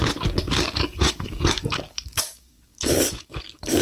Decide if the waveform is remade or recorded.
remade